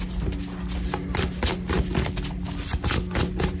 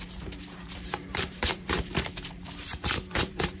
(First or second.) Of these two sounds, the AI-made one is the second